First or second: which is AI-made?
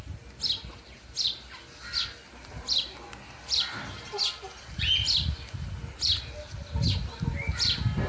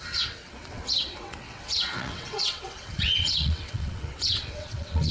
second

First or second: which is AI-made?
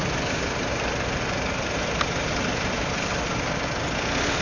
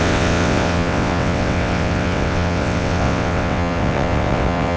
second